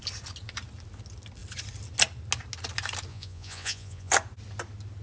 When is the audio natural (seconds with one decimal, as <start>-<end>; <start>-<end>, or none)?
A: 0.0-3.1; 4.1-5.0